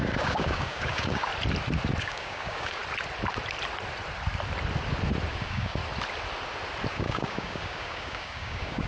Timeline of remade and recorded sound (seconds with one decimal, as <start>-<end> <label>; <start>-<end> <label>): 0.0-1.3 remade; 1.3-2.0 recorded; 2.0-2.8 remade; 2.8-5.3 recorded; 5.3-5.8 remade; 5.8-6.9 recorded; 6.9-8.9 remade